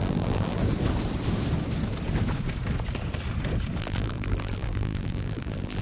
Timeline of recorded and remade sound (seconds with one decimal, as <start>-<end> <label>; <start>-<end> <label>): 0.0-0.6 remade; 0.6-3.8 recorded; 3.8-5.8 remade